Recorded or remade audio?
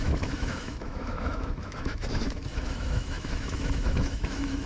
remade